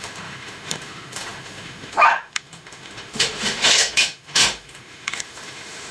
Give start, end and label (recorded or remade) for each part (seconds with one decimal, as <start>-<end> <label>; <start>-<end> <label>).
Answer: 0.0-5.9 remade